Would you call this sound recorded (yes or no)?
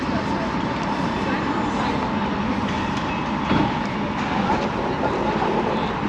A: yes